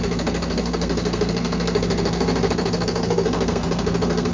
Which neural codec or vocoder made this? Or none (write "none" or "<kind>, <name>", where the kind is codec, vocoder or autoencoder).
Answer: codec, SNAC